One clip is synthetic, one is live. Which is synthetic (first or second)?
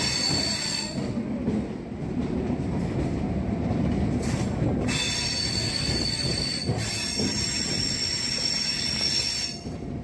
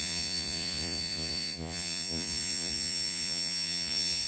second